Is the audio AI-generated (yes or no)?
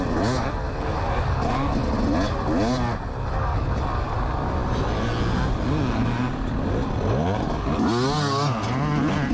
no